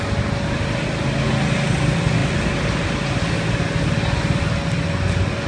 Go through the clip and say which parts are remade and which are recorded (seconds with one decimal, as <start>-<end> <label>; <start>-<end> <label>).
0.0-5.5 recorded